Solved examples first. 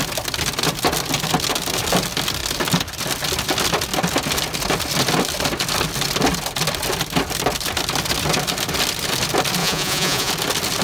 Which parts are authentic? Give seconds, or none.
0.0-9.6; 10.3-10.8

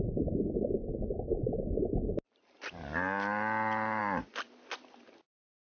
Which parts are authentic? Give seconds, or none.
0.0-5.7

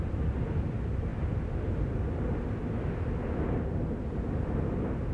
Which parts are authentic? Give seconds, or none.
0.0-5.1

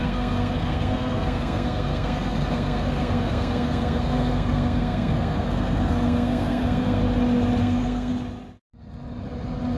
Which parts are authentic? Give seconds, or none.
7.0-7.6; 8.1-9.8

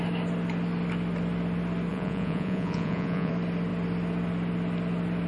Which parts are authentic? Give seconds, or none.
0.0-1.9; 3.3-5.3

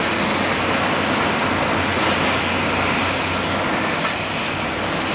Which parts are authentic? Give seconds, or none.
0.0-5.1

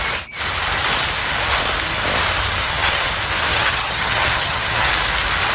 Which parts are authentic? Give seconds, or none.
0.0-2.6; 3.1-3.5; 4.9-5.5